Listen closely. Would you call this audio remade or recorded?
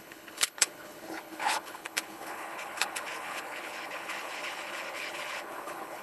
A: remade